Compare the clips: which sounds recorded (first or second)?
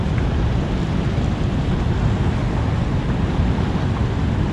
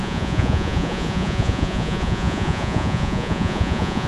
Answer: first